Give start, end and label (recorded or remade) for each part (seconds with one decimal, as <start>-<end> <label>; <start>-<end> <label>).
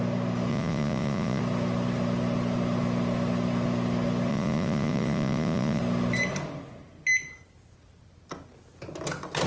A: 0.0-0.5 recorded; 0.5-1.4 remade; 1.4-4.3 recorded; 4.3-5.8 remade; 5.8-9.5 recorded